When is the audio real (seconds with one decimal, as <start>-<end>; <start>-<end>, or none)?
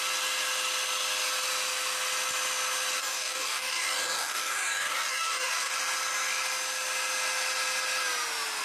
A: 0.0-3.0; 5.7-8.6